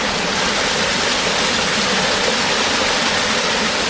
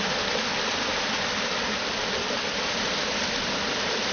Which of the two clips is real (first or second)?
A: second